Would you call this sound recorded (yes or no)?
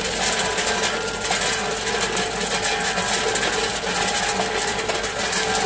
yes